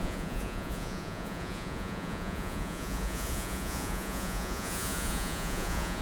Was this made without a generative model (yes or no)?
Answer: no